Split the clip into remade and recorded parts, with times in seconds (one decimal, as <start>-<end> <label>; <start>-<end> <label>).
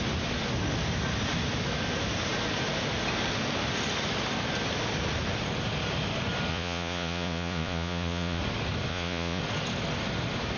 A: 0.0-6.5 recorded; 6.5-8.4 remade; 8.4-8.9 recorded; 8.9-9.4 remade; 9.4-10.6 recorded